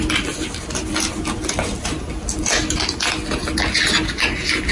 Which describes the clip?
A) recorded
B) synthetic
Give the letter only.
A